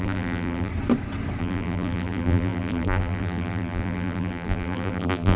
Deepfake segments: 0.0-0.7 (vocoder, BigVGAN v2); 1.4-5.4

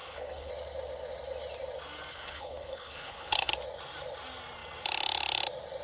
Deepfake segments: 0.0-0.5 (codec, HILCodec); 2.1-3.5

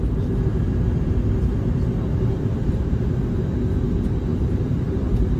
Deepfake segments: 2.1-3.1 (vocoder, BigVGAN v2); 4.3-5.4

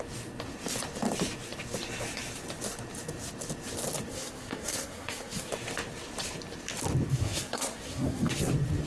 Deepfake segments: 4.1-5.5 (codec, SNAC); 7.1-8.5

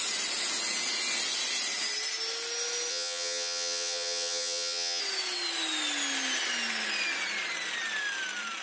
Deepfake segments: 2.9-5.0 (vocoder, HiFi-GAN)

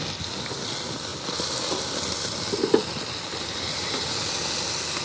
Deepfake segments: 1.1-4.1 (vocoder, BigVGAN v2)

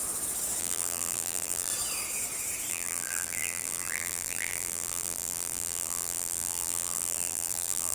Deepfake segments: 0.6-1.7 (vocoder, BigVGAN v2); 2.7-7.9